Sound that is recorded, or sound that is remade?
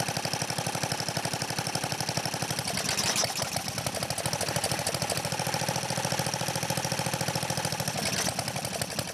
recorded